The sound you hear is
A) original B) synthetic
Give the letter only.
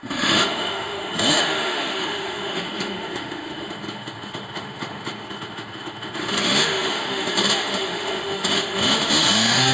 B